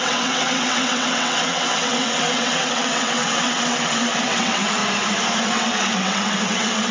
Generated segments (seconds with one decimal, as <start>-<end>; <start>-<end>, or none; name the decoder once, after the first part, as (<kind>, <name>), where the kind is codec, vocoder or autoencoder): 0.0-4.8 (vocoder, WaveNeXt); 5.5-6.9